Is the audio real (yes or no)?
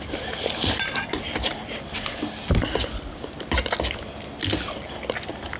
yes